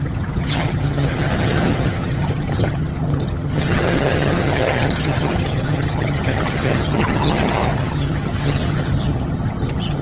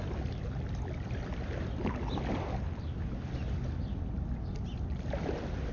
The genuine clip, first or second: second